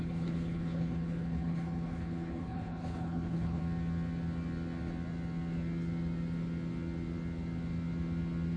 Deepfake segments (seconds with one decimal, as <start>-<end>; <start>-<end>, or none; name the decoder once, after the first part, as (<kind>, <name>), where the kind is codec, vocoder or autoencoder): 0.0-3.6 (codec, HILCodec)